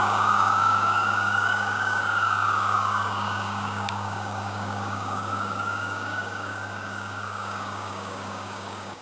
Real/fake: fake